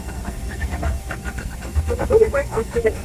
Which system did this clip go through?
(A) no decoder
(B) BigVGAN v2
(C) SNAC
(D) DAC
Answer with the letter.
C